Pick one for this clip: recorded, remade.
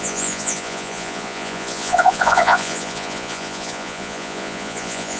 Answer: remade